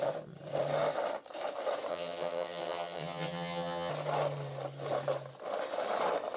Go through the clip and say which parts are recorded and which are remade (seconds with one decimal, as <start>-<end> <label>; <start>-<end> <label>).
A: 0.0-1.9 recorded; 1.9-3.9 remade; 3.9-6.4 recorded